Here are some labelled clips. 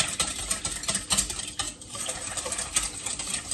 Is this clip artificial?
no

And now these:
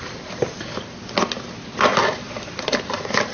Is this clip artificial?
yes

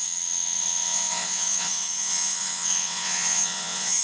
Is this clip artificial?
yes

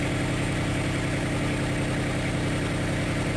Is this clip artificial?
no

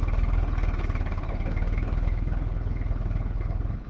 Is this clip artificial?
yes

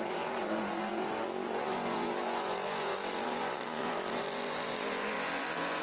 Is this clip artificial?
yes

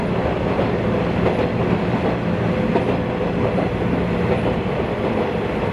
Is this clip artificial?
no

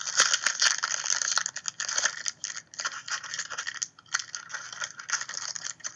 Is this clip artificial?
no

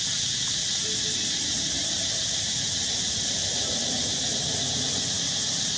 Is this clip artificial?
no